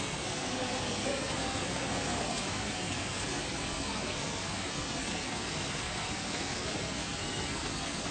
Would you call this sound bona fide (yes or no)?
no